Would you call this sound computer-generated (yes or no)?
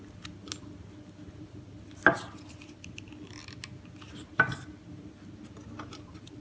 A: no